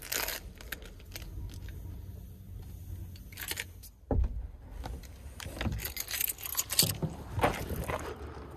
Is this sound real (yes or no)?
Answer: yes